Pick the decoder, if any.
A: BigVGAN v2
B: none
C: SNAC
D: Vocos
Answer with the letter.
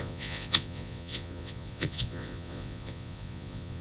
D